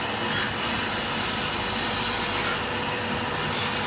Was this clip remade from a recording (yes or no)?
no